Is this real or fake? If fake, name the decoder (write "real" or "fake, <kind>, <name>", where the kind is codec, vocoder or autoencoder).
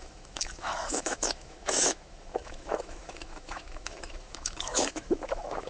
fake, autoencoder, DAC-VAE